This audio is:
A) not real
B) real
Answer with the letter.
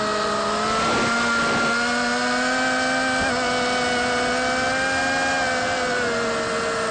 B